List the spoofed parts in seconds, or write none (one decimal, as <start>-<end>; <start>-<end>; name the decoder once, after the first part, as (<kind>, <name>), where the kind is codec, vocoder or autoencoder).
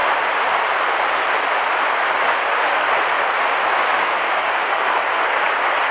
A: 3.8-5.0 (codec, DAC)